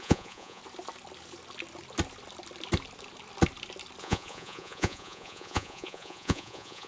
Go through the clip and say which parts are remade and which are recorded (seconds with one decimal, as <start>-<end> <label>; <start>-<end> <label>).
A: 0.0-0.6 remade; 0.6-4.0 recorded; 4.0-6.9 remade